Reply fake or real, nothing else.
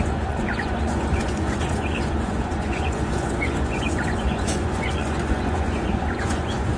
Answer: fake